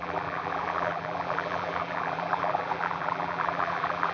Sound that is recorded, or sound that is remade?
remade